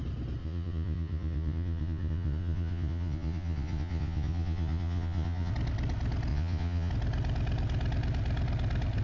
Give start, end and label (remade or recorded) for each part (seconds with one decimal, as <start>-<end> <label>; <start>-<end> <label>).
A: 0.0-0.4 recorded; 0.4-5.5 remade; 5.5-6.3 recorded; 6.3-6.9 remade; 6.9-9.0 recorded